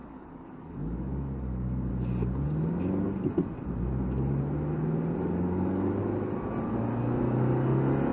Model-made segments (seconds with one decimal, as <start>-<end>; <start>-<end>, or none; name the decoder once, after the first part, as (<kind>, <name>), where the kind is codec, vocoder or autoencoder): 0.0-1.9 (codec, DAC); 5.2-6.0